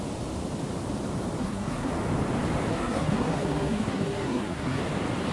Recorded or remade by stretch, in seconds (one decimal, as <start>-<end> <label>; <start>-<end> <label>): 0.0-1.4 recorded; 1.4-1.9 remade; 1.9-2.7 recorded; 2.7-4.8 remade; 4.8-5.3 recorded

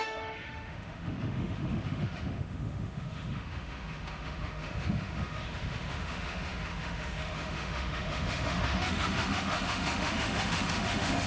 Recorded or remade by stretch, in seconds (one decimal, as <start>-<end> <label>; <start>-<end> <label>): 0.0-11.3 remade

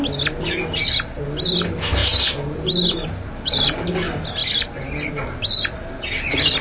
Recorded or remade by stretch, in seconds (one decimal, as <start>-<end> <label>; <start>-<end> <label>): 0.0-6.6 recorded

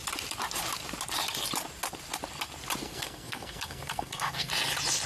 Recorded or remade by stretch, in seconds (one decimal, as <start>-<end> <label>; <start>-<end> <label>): 0.0-2.8 recorded; 2.8-4.5 remade; 4.5-5.1 recorded

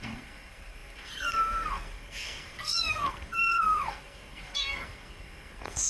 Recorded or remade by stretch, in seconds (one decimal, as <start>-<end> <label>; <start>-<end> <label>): 0.0-5.9 remade